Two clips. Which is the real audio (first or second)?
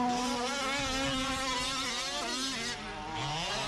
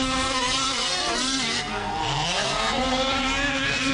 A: first